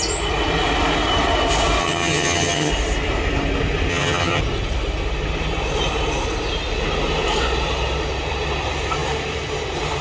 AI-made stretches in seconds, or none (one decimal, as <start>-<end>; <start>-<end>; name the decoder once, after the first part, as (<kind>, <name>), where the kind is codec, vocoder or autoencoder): 1.8-2.7 (vocoder, HiFi-GAN); 3.9-4.4